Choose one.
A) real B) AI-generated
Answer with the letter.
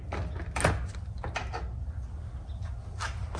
A